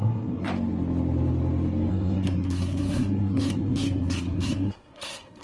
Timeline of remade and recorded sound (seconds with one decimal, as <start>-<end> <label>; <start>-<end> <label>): 0.0-0.5 remade; 0.5-1.9 recorded; 1.9-5.4 remade